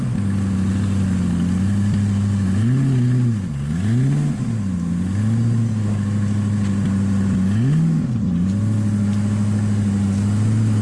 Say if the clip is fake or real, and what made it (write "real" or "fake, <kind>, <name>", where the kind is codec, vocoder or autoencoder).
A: real